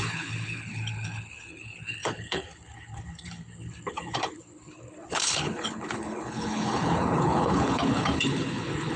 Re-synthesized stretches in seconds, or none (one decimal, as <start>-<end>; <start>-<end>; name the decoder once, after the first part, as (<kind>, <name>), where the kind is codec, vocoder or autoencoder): 0.0-9.0 (codec, HILCodec)